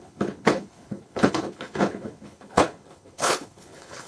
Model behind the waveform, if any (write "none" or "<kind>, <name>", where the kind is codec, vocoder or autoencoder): codec, HILCodec